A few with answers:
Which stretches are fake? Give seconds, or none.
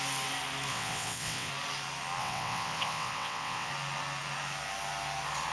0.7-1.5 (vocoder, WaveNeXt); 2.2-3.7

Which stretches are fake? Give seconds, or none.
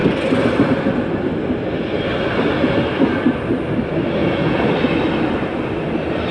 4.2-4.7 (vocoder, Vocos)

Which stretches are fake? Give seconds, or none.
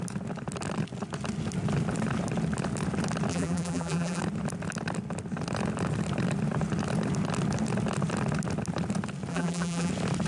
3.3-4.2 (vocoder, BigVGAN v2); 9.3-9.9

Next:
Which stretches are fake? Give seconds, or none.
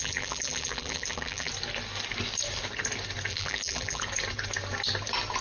0.0-1.5 (vocoder, BigVGAN v2); 3.3-4.0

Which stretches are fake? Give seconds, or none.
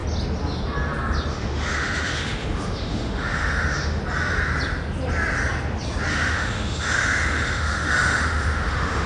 1.3-4.0 (autoencoder, DAC-VAE); 6.1-9.1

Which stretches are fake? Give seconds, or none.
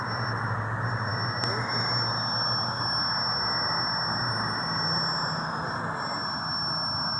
none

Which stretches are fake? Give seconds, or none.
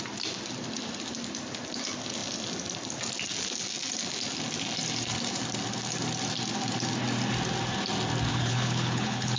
8.3-9.4 (codec, HILCodec)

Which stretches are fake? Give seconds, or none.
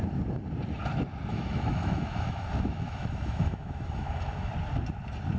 1.3-4.5 (autoencoder, DAC-VAE)